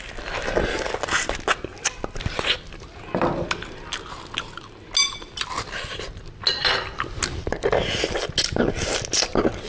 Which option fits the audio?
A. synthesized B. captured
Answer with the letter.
B